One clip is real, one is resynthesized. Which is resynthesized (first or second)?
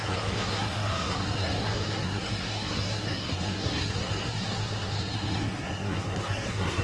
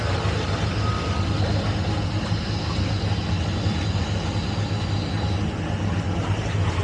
first